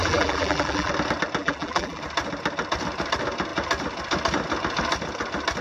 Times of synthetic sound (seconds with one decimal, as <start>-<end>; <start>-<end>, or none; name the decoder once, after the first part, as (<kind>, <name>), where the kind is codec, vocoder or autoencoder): 0.0-0.9 (vocoder, BigVGAN v2); 1.4-2.0